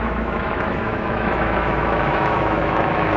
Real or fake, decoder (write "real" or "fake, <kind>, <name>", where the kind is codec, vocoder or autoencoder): fake, autoencoder, DAC-VAE